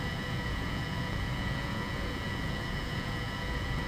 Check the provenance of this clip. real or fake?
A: fake